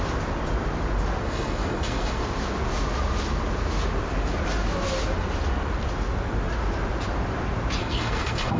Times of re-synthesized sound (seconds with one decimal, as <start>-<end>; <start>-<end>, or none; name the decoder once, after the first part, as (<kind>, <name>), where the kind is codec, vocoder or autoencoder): 1.2-2.2 (codec, SNAC); 7.8-8.6